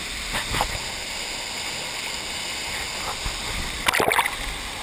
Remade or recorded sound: recorded